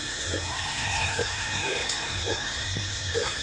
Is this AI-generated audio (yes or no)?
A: yes